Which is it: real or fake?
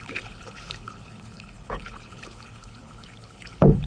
fake